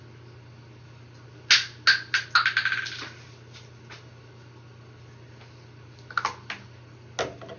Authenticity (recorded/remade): recorded